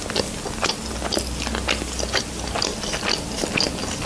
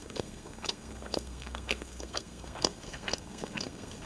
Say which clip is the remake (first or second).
second